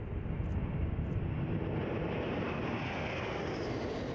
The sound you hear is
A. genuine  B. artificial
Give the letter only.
A